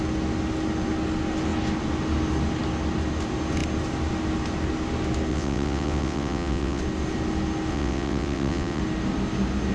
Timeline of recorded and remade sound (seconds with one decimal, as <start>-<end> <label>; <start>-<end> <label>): 0.0-5.3 recorded; 5.3-6.8 remade; 6.8-7.7 recorded; 7.7-8.8 remade; 8.8-9.7 recorded